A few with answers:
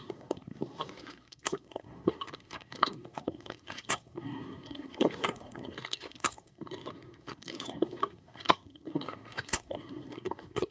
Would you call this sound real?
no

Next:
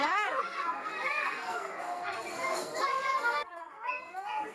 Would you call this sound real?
no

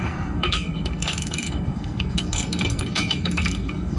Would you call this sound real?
no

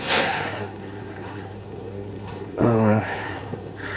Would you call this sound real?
no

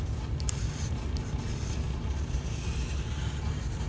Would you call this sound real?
yes